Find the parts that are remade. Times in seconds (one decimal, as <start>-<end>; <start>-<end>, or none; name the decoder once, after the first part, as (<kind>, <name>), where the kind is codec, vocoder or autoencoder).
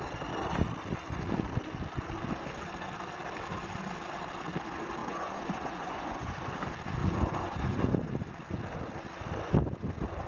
5.0-6.5 (vocoder, Vocos); 7.0-7.8